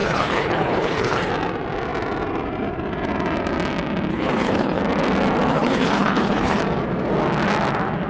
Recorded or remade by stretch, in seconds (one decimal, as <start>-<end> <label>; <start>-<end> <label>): 0.0-1.3 remade; 1.3-4.1 recorded; 4.1-4.8 remade; 4.8-5.5 recorded; 5.5-6.6 remade; 6.6-8.1 recorded

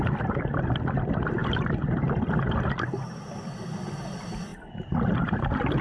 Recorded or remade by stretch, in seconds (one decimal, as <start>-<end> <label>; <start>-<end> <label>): 0.0-4.5 recorded; 4.5-5.8 remade

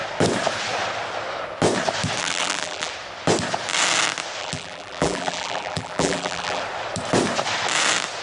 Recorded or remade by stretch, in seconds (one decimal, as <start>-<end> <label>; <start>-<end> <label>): 0.0-2.2 recorded; 2.2-2.9 remade; 2.9-4.4 recorded; 4.4-6.6 remade; 6.6-8.2 recorded

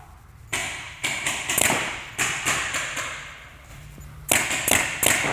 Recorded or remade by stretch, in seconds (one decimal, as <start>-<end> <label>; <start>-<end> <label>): 0.0-0.6 recorded; 0.6-2.1 remade; 2.1-3.7 recorded; 3.7-4.3 remade; 4.3-5.3 recorded

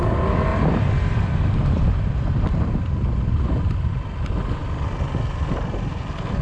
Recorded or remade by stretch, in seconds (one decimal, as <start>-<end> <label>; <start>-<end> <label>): 0.0-0.5 recorded; 0.5-4.3 remade; 4.3-6.4 recorded

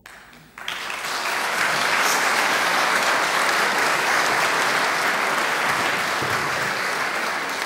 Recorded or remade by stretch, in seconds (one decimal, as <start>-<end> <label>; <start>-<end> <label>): 0.0-1.2 recorded; 1.2-3.1 remade; 3.1-3.8 recorded; 3.8-4.4 remade; 4.4-6.4 recorded; 6.4-7.3 remade; 7.3-7.7 recorded